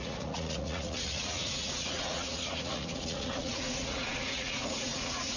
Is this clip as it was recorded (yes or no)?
no